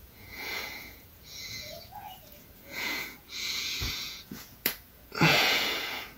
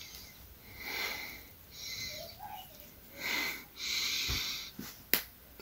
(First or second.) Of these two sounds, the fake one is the first